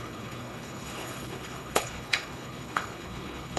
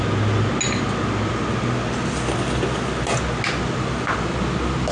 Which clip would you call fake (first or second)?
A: first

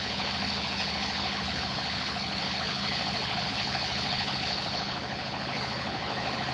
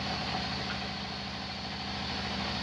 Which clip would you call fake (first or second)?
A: first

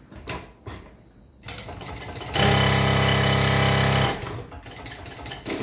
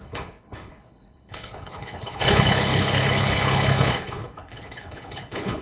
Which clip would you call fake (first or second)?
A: second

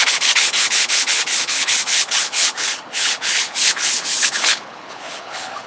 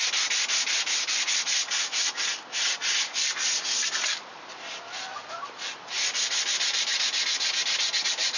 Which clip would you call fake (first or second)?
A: first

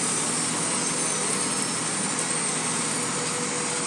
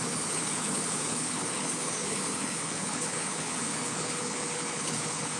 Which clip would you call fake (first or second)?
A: second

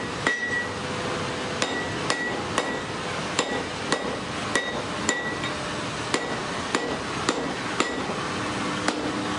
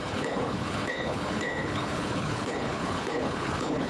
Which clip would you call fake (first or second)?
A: second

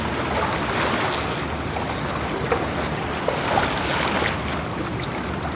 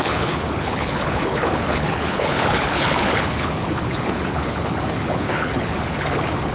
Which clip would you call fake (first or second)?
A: second